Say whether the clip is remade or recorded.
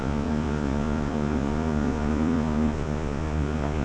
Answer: remade